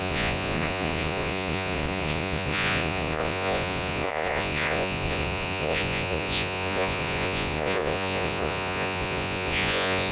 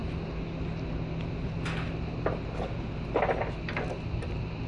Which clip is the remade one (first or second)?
first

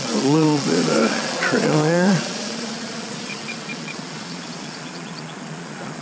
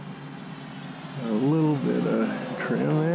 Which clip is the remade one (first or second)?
first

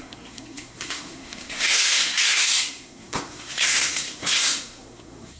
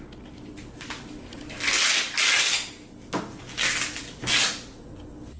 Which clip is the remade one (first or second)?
first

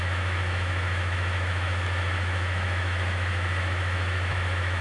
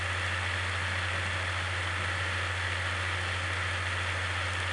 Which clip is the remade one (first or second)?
first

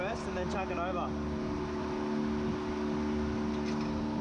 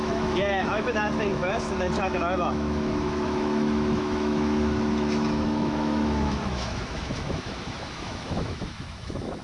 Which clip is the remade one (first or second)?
second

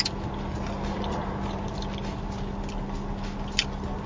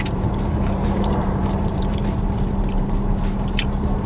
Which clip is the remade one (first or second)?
second